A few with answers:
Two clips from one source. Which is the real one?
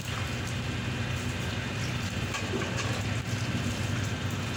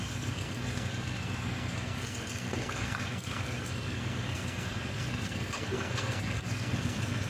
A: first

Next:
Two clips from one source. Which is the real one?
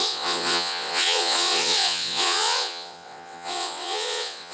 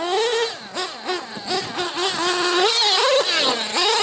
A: second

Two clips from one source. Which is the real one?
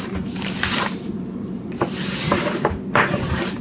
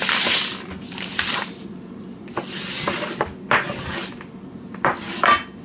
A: second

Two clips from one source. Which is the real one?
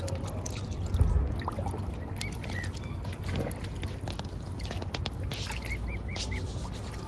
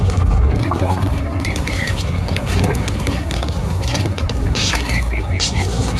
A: first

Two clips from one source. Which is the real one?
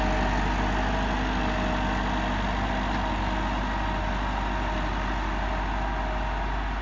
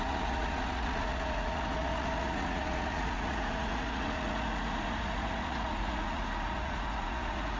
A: first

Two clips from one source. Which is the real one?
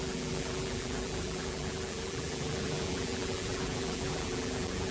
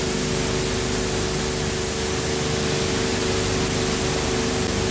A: second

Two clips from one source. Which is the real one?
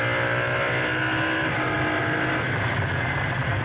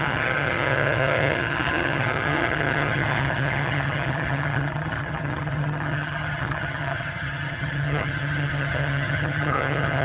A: first